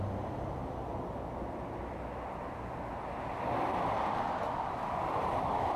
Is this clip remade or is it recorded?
recorded